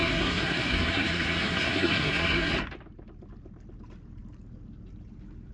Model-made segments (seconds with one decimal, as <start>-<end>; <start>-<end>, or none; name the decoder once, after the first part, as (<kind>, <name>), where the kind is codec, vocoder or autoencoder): 0.0-2.5 (codec, SNAC)